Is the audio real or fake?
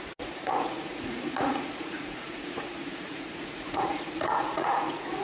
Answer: fake